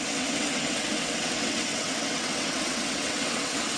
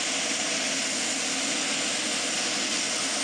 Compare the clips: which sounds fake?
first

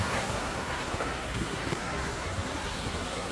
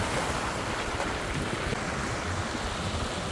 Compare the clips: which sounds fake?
first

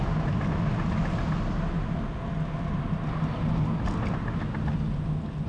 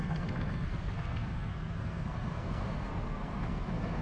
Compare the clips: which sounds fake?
second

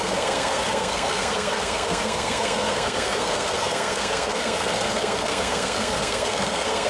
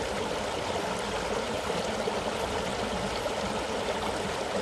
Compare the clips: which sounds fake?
first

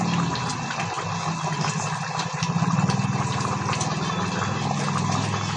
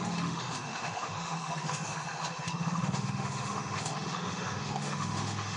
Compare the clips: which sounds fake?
second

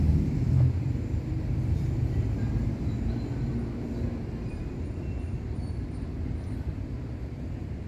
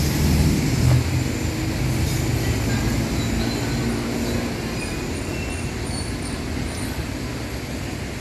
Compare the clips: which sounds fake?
first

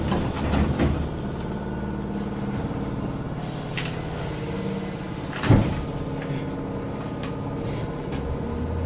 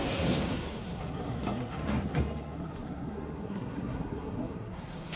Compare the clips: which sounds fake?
second